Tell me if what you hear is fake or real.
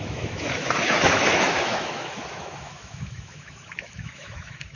fake